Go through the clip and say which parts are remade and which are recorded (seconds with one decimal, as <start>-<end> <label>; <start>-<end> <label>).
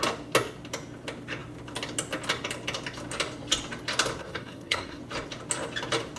0.0-4.2 recorded; 4.2-5.0 remade; 5.0-6.2 recorded